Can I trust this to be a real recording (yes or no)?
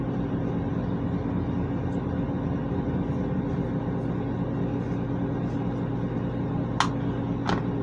yes